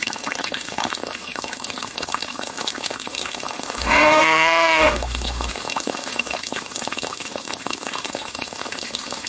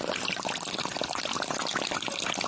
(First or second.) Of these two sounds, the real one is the second